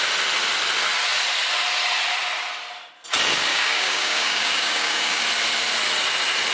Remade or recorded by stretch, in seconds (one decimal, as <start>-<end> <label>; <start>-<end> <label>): 0.0-3.5 recorded; 3.5-5.2 remade; 5.2-6.5 recorded